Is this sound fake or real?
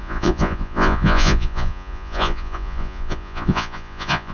fake